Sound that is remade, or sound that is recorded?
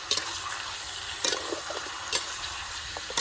recorded